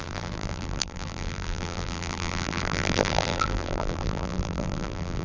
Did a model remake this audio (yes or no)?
yes